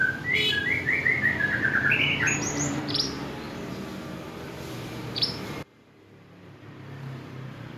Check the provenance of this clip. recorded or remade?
remade